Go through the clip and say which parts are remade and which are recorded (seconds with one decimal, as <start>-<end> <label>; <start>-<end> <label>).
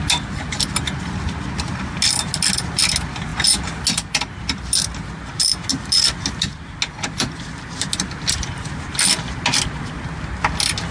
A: 0.0-10.9 recorded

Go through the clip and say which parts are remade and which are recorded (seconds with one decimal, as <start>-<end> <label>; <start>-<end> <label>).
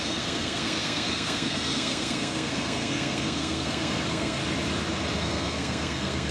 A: 0.0-4.4 remade; 4.4-5.2 recorded; 5.2-6.3 remade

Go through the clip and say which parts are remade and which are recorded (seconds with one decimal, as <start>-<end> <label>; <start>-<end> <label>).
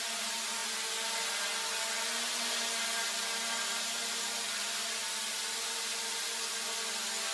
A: 0.0-7.3 recorded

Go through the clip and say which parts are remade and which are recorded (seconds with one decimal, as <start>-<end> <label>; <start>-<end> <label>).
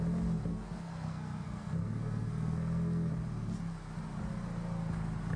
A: 0.0-0.5 recorded; 0.5-3.1 remade; 3.1-5.4 recorded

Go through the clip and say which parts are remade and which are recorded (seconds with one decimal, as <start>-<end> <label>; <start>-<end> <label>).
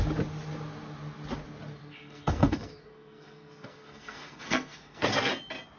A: 0.0-1.8 recorded; 1.8-5.3 remade; 5.3-5.8 recorded